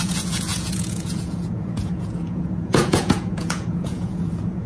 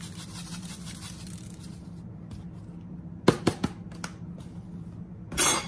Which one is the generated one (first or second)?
first